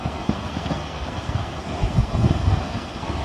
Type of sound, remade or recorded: remade